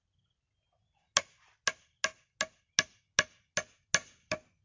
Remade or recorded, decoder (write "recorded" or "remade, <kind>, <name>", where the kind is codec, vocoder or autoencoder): recorded